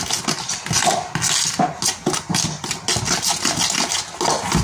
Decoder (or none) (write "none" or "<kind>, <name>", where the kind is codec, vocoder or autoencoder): none